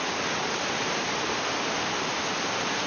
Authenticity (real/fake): real